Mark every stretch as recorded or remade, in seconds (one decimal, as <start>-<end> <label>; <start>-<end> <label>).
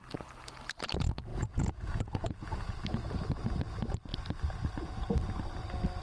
0.0-1.3 recorded; 1.3-2.7 remade; 2.7-6.0 recorded